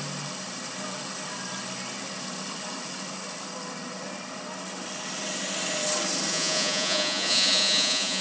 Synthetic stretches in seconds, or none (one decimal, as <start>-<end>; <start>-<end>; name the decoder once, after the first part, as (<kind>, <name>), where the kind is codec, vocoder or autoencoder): 6.3-8.2 (vocoder, Vocos)